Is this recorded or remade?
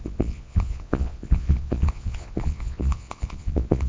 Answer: remade